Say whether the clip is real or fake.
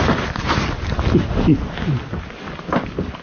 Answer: real